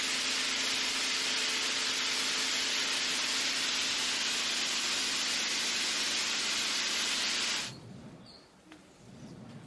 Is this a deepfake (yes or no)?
no